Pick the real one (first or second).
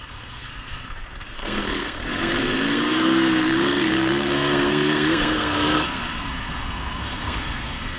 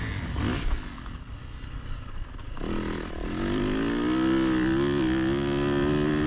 second